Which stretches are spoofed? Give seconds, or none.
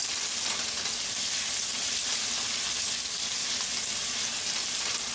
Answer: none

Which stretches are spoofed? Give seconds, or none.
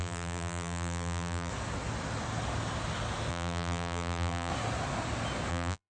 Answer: 0.0-1.5 (vocoder, BigVGAN v2); 3.3-4.5; 5.5-5.9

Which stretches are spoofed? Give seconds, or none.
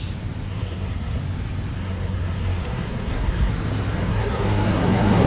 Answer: 0.5-1.2 (codec, SNAC); 1.8-3.5; 4.0-5.3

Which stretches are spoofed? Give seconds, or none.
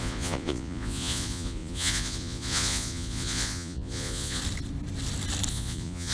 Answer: 0.0-4.4 (vocoder, Vocos); 5.5-6.1